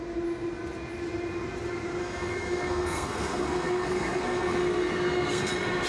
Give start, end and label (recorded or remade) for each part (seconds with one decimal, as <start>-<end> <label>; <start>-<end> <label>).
0.0-2.0 recorded; 2.0-5.5 remade; 5.5-5.9 recorded